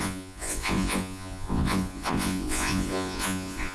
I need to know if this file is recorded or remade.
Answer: remade